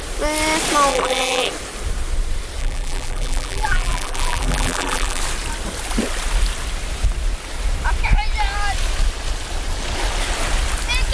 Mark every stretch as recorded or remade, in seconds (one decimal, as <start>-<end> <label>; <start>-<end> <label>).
0.0-0.9 recorded; 0.9-1.5 remade; 1.5-2.6 recorded; 2.6-5.2 remade; 5.2-11.1 recorded

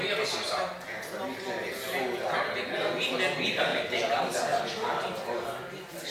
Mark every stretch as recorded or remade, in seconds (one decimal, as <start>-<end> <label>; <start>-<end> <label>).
0.0-3.7 recorded; 3.7-4.6 remade; 4.6-6.1 recorded

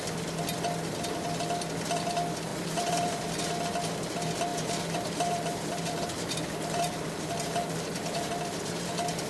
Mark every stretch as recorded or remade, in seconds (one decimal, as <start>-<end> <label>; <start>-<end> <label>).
0.0-2.5 recorded; 2.5-3.2 remade; 3.2-4.5 recorded; 4.5-9.3 remade

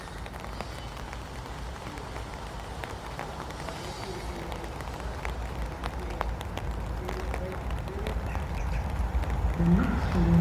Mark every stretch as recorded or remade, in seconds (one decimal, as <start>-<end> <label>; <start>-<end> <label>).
0.0-2.8 recorded; 2.8-3.8 remade; 3.8-10.4 recorded

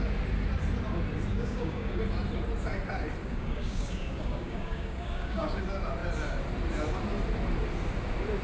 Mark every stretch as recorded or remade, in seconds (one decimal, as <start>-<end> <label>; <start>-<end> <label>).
0.0-1.3 recorded; 1.3-2.0 remade; 2.0-3.2 recorded; 3.2-5.6 remade; 5.6-8.4 recorded

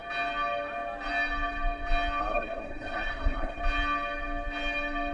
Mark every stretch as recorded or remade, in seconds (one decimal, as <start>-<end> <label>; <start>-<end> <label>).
0.0-2.2 recorded; 2.2-3.6 remade; 3.6-5.1 recorded

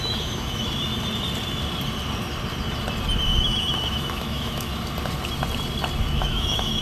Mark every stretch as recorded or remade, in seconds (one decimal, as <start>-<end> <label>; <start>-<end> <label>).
0.0-0.9 remade; 0.9-3.4 recorded; 3.4-4.7 remade; 4.7-6.0 recorded; 6.0-6.8 remade